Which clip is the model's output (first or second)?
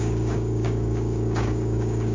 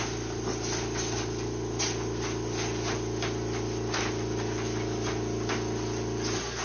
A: first